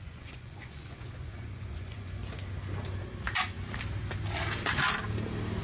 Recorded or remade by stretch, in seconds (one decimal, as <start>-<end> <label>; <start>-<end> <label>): 0.0-2.2 remade; 2.2-5.6 recorded